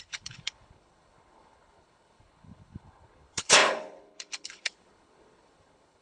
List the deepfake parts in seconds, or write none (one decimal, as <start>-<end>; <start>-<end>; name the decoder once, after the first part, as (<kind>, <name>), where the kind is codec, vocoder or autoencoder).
0.0-6.0 (codec, HILCodec)